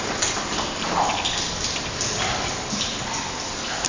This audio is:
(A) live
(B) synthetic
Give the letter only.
A